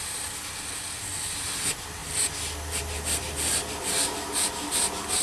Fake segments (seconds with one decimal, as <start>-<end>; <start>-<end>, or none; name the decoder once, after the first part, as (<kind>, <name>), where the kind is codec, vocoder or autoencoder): none